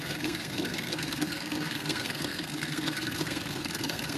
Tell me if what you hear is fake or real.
fake